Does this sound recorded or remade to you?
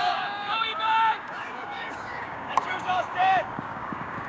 remade